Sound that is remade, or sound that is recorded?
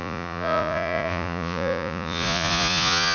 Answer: remade